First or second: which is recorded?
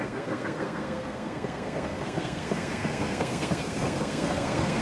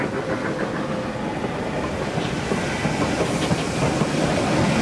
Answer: second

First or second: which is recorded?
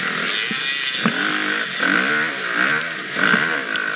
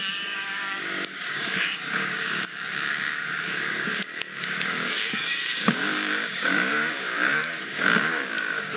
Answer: first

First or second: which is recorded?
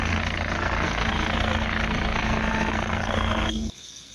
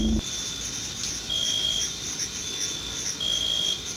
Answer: second